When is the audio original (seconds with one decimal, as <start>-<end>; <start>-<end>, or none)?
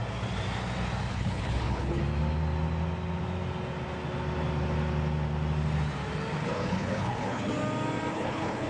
0.0-1.1; 2.0-6.4; 7.5-8.1